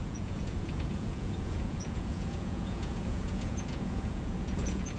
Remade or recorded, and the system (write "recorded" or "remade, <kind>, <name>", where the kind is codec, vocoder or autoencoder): remade, vocoder, Vocos